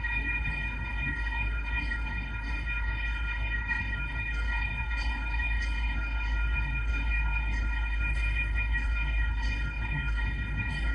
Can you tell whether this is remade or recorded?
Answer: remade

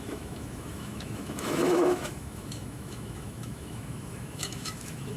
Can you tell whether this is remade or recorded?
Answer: remade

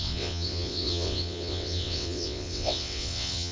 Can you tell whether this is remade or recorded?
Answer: remade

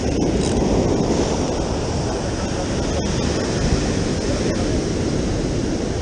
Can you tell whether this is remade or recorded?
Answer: recorded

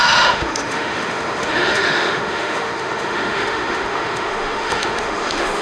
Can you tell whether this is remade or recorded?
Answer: remade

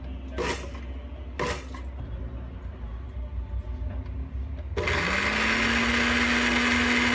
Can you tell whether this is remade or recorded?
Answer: recorded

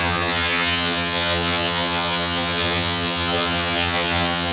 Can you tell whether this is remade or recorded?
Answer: remade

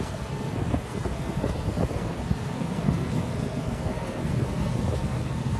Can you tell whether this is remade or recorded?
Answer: remade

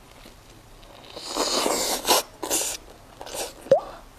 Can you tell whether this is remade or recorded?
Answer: recorded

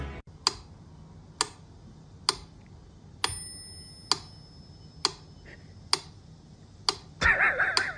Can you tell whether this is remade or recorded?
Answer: recorded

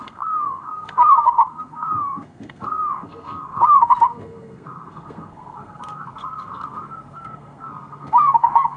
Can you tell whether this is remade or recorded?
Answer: remade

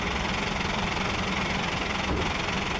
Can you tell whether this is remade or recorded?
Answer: recorded